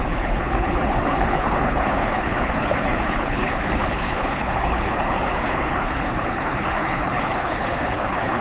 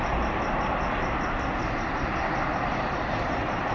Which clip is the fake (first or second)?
first